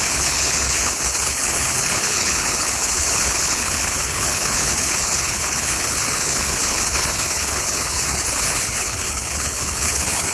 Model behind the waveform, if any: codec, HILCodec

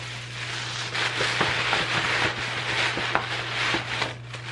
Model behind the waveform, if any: none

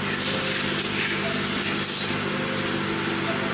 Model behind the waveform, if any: none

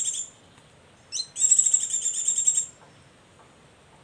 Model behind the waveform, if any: none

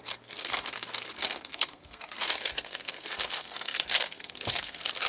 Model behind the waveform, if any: codec, SNAC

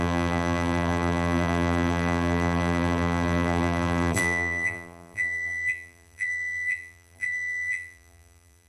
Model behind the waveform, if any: vocoder, BigVGAN v2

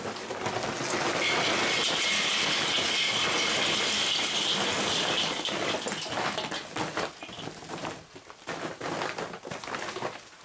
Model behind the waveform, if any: none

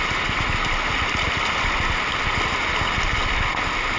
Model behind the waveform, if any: none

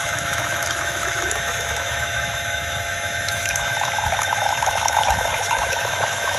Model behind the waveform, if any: autoencoder, DAC-VAE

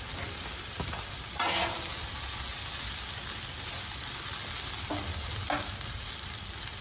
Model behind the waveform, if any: none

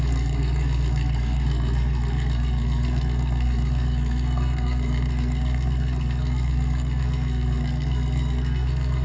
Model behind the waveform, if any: codec, SNAC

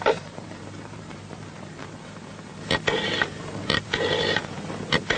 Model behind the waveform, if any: vocoder, BigVGAN v2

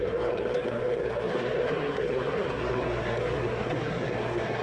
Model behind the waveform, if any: codec, SNAC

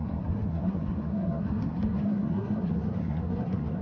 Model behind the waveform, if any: codec, SNAC